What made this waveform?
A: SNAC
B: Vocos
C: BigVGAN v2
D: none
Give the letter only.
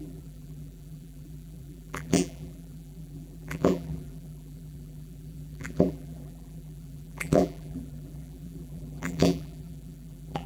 C